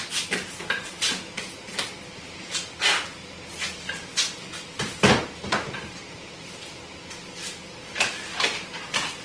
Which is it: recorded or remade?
recorded